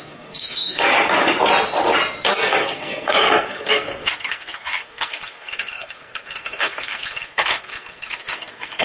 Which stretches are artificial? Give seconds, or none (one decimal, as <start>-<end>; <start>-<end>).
0.0-0.9; 2.3-8.8